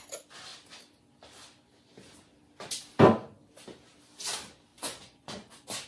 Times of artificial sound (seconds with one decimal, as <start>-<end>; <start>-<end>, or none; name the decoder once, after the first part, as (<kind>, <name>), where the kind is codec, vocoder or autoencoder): 4.7-5.5 (vocoder, Vocos)